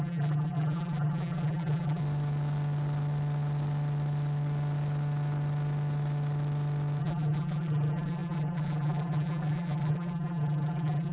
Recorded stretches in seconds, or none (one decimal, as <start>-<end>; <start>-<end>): 2.0-7.0